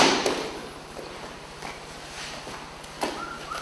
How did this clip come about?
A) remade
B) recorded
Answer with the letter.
B